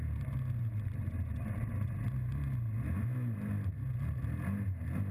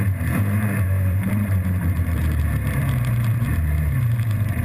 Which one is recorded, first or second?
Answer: first